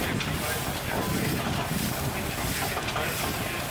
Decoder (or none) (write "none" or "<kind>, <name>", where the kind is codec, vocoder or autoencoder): none